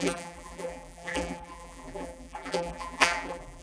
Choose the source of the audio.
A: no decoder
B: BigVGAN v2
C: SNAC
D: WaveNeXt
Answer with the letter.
B